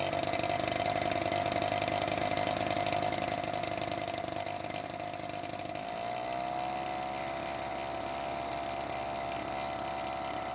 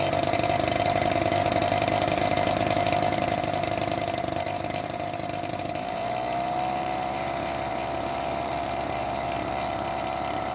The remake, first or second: second